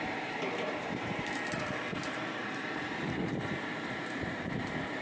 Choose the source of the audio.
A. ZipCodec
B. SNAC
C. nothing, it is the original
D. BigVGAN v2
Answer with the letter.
D